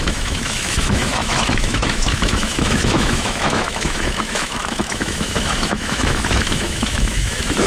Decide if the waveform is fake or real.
fake